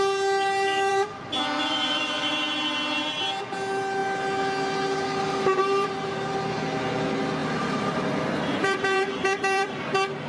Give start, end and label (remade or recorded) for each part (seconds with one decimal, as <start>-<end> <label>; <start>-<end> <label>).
0.0-0.9 recorded; 0.9-2.3 remade; 2.3-7.4 recorded; 7.4-10.3 remade